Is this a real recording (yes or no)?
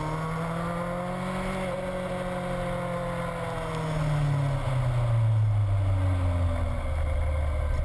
yes